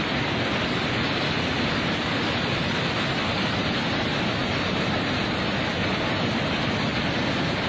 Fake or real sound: real